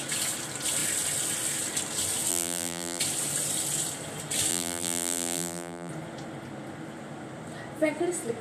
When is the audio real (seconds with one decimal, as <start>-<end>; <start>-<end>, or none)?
0.0-2.3; 3.0-4.5; 5.9-8.4